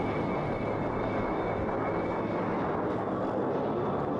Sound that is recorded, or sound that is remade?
recorded